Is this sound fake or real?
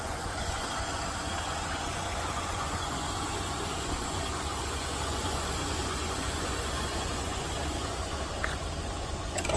fake